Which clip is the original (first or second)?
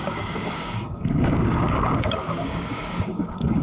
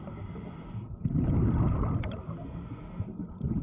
second